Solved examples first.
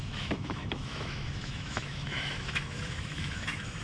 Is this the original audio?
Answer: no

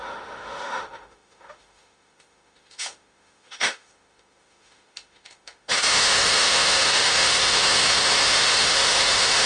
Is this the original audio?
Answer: no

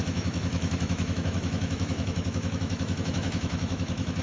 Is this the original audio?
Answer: no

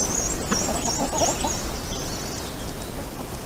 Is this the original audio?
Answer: yes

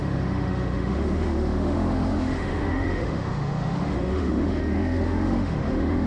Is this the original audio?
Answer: no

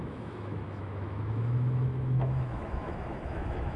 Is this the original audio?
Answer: no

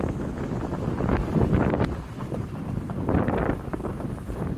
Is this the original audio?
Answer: yes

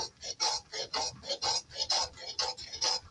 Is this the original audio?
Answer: yes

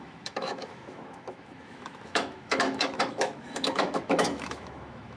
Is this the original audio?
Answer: no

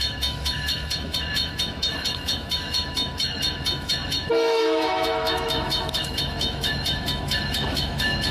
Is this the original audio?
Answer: no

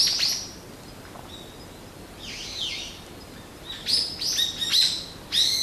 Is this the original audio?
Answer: yes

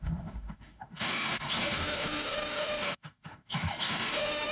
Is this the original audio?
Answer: no